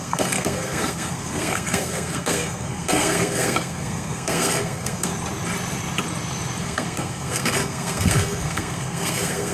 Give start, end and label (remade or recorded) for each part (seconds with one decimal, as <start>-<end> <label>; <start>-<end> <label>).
0.0-5.1 remade; 5.1-6.6 recorded; 6.6-9.5 remade